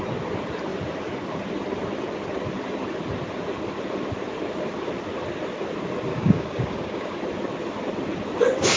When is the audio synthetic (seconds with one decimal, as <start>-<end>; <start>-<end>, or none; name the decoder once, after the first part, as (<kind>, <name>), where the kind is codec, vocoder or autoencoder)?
6.1-7.2 (codec, DAC)